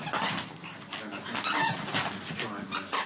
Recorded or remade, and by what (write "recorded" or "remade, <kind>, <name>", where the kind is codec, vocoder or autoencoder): recorded